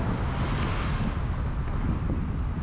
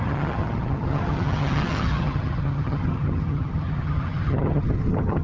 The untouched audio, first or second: first